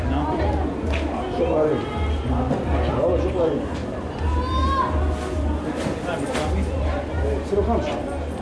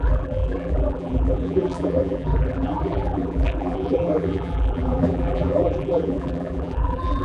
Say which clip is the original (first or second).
first